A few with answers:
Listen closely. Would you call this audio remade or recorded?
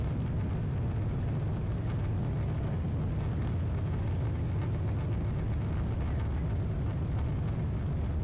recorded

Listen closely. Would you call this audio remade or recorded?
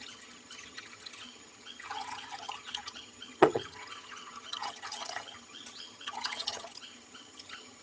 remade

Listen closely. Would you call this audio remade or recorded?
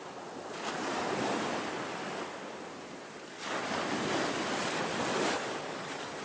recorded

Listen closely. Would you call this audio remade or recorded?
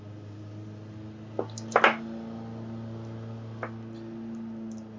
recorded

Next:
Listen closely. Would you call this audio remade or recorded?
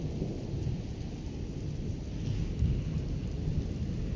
recorded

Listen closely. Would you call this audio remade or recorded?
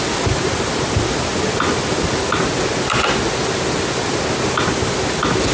recorded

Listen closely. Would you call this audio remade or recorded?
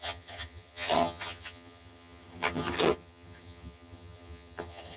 remade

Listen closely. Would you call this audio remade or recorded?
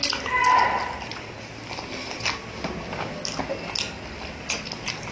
recorded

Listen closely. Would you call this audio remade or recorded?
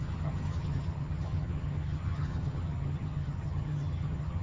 remade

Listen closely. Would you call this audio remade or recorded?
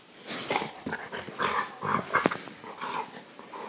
recorded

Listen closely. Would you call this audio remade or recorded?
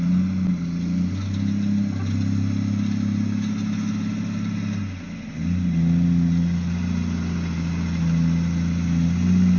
recorded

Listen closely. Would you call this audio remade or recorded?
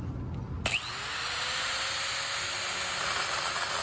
recorded